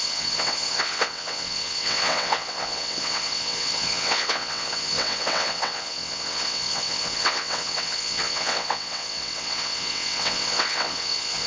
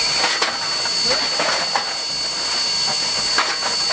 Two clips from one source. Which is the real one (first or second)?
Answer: second